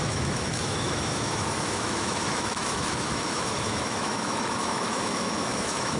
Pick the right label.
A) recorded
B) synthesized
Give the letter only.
B